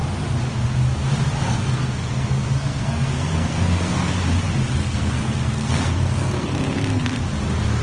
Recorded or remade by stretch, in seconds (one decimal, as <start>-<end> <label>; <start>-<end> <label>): 0.0-1.4 recorded; 1.4-4.2 remade; 4.2-4.8 recorded; 4.8-7.2 remade; 7.2-7.8 recorded

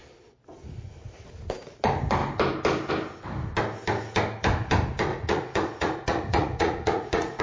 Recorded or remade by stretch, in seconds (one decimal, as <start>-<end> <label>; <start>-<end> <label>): 0.0-5.1 recorded; 5.1-7.4 remade

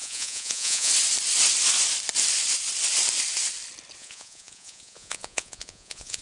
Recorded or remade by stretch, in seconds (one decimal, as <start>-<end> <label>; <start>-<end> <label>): 0.0-0.9 remade; 0.9-4.0 recorded; 4.0-6.2 remade

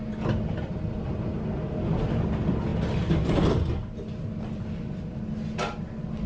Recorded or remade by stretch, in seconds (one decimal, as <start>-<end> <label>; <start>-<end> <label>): 0.0-6.3 recorded

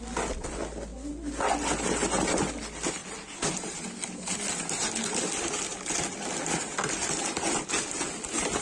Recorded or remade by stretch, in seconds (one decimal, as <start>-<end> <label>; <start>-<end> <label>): 0.0-8.6 recorded

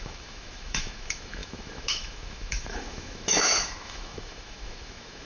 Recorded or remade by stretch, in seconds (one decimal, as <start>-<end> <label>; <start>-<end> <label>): 0.0-5.3 remade